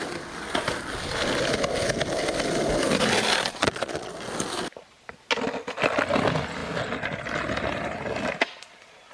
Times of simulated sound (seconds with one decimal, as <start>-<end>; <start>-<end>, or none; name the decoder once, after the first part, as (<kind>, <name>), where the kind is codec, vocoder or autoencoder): 3.5-4.1 (vocoder, Vocos)